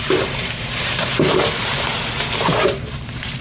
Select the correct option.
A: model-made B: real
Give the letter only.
A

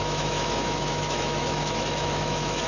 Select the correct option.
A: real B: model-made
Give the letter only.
B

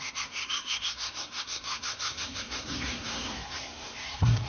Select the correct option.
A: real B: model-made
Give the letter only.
B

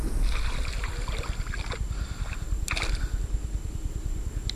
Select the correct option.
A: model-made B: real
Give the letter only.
B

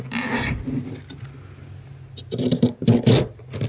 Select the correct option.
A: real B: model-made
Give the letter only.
A